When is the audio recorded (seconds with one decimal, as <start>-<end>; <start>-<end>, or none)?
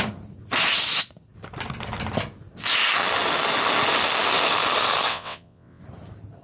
0.0-5.1; 5.8-6.4